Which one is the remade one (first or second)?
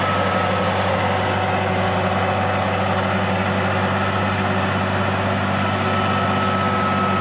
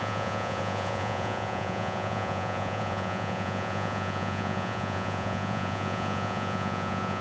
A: second